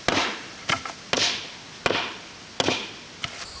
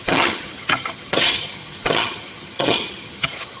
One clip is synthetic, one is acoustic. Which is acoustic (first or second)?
first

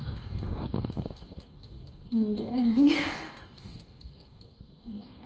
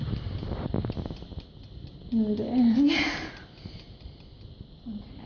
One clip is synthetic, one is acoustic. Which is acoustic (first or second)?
second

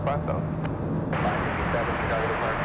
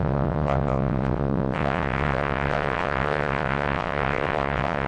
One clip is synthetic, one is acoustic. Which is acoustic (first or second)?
first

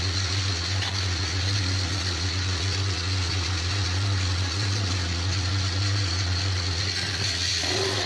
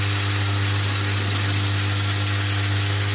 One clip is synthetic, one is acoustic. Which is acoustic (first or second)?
second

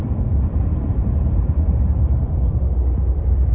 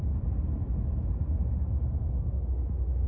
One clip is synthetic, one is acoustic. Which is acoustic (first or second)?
second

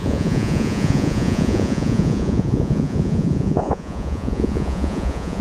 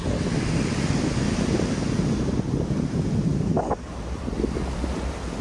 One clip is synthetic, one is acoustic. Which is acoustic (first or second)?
second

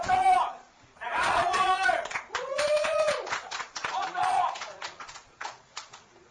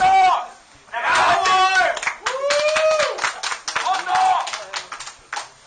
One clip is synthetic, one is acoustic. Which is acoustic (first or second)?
second